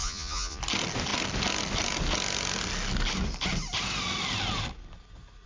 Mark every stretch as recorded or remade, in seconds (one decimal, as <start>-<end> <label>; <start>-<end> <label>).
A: 0.0-0.6 remade; 0.6-5.5 recorded